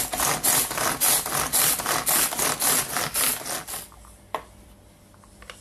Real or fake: real